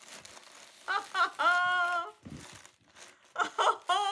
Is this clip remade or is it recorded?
recorded